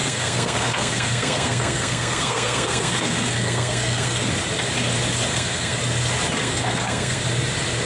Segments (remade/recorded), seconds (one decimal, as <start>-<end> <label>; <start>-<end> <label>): 0.0-4.3 remade; 4.3-5.3 recorded; 5.3-5.8 remade; 5.8-6.4 recorded; 6.4-7.2 remade; 7.2-7.9 recorded

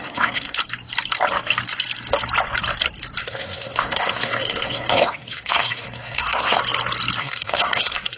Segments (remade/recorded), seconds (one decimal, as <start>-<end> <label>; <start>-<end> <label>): 0.0-0.6 remade; 0.6-3.2 recorded; 3.2-6.6 remade; 6.6-7.2 recorded; 7.2-8.2 remade

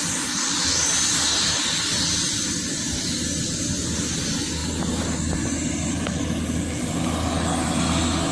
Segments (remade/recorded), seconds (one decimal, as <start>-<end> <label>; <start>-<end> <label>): 0.0-8.3 recorded

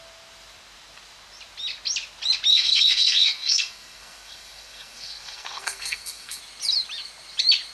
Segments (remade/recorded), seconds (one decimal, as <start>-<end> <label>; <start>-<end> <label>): 0.0-2.5 recorded; 2.5-6.4 remade; 6.4-7.7 recorded

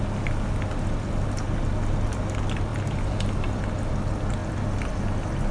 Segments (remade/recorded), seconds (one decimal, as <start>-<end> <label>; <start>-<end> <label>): 0.0-5.5 recorded

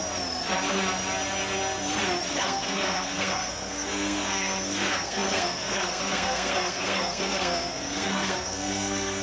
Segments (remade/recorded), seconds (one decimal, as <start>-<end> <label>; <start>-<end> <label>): 0.0-2.3 recorded; 2.3-9.2 remade

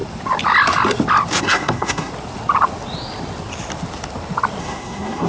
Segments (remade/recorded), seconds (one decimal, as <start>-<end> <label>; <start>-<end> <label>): 0.0-1.4 recorded; 1.4-2.1 remade; 2.1-4.6 recorded; 4.6-5.3 remade